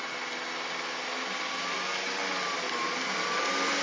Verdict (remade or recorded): recorded